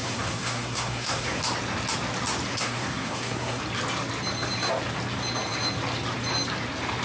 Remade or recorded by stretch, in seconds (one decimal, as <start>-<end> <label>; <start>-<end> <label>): 0.0-1.4 remade; 1.4-2.5 recorded; 2.5-3.6 remade; 3.6-7.0 recorded